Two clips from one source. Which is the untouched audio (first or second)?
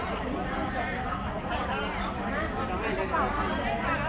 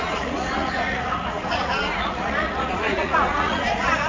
first